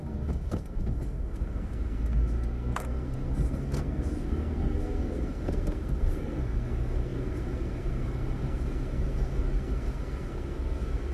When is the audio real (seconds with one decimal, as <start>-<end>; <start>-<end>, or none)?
none